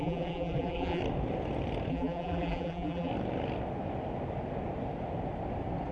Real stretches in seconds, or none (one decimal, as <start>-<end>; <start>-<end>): 1.0-1.9; 3.1-5.9